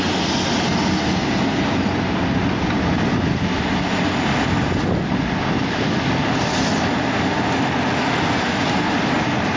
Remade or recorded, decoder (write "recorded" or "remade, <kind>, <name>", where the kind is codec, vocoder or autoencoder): recorded